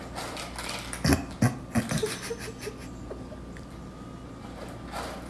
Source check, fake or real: real